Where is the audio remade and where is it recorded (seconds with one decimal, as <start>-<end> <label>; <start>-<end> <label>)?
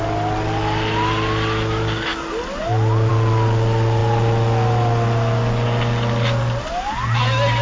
0.0-7.6 recorded